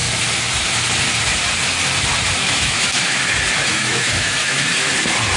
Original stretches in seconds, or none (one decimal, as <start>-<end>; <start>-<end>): 0.0-2.4; 3.3-3.7; 4.9-5.4